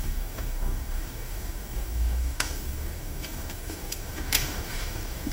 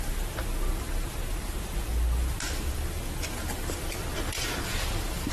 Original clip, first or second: second